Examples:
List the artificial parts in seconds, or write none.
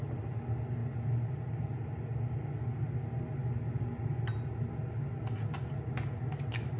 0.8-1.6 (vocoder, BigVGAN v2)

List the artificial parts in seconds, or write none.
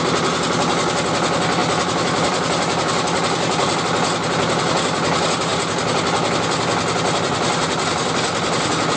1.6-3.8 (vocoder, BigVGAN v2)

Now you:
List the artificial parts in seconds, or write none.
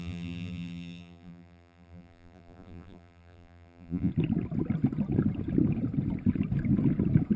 0.0-4.1 (vocoder, BigVGAN v2)